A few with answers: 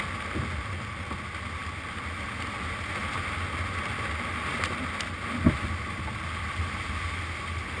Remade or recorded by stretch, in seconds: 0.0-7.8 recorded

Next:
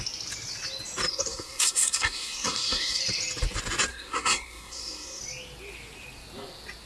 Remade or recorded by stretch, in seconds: 0.0-1.1 recorded; 1.1-3.0 remade; 3.0-3.9 recorded; 3.9-5.2 remade; 5.2-6.9 recorded

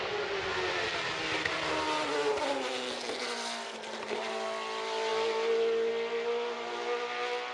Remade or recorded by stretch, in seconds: 0.0-7.5 recorded

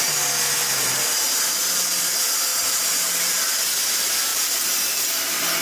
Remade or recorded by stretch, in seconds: 0.0-2.5 recorded; 2.5-3.3 remade; 3.3-4.3 recorded; 4.3-5.1 remade; 5.1-5.6 recorded